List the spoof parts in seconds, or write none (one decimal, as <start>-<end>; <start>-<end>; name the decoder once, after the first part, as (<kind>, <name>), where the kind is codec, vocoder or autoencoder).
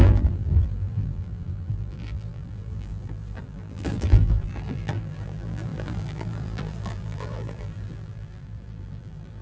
0.0-9.4 (vocoder, BigVGAN v2)